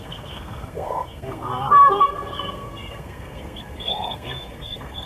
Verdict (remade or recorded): remade